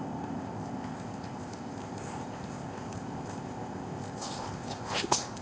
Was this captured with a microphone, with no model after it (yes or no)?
no